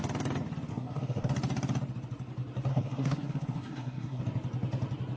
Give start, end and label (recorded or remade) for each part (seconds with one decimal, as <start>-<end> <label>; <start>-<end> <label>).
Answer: 0.0-0.7 recorded; 0.7-1.3 remade; 1.3-2.7 recorded; 2.7-4.2 remade; 4.2-5.2 recorded